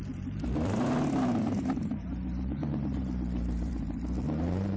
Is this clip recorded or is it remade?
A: remade